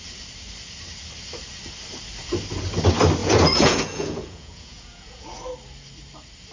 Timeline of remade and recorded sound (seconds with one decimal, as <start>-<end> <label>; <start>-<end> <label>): 0.0-3.2 recorded; 3.2-5.2 remade; 5.2-6.5 recorded